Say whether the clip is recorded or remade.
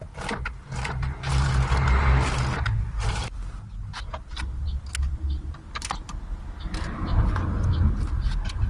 recorded